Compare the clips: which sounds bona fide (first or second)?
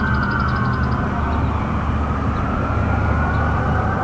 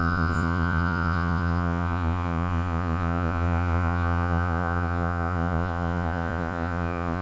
first